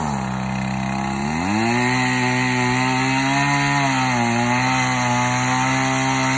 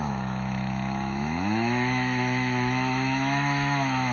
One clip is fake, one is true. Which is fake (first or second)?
second